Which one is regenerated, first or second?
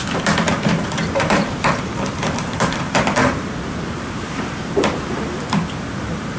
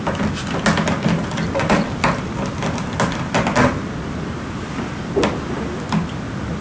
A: first